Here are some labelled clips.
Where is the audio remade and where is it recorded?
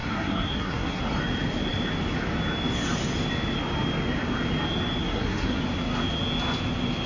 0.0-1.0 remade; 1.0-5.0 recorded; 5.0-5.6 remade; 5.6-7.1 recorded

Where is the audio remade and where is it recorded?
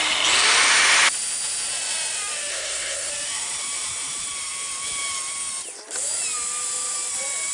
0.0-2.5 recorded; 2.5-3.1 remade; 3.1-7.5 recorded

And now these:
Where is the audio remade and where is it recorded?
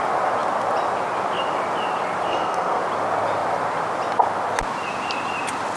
0.0-2.3 recorded; 2.3-2.8 remade; 2.8-5.8 recorded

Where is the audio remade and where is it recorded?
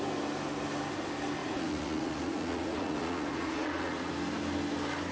0.0-1.4 recorded; 1.4-4.1 remade; 4.1-5.1 recorded